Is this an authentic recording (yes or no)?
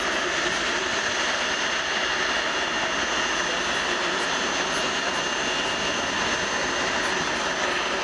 yes